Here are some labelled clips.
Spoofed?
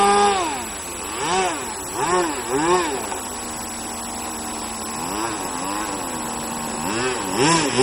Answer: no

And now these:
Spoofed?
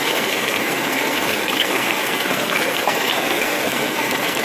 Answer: yes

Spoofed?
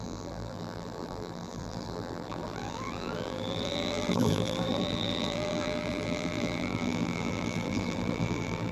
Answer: yes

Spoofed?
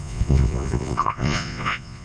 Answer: yes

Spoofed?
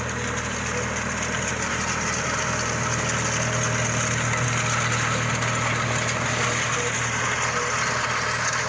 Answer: no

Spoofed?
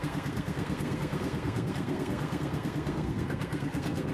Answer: yes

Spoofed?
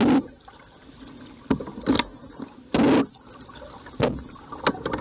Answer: no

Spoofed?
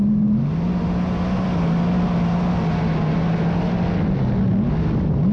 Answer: no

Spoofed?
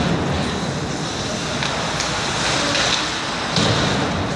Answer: no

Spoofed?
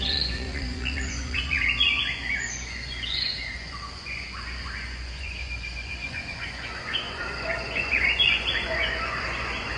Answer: yes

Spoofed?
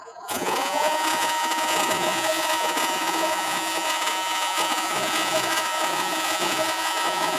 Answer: yes